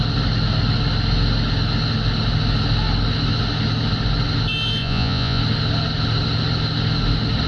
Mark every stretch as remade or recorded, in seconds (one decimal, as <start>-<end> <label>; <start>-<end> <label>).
0.0-4.8 recorded; 4.8-5.4 remade; 5.4-7.5 recorded